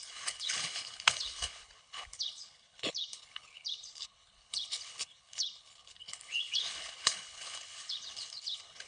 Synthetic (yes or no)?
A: yes